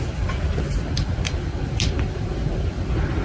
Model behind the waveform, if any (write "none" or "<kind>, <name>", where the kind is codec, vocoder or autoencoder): none